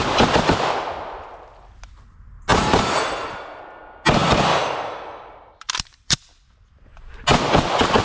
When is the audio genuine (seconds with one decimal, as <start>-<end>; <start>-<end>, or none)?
0.0-4.2; 6.5-8.0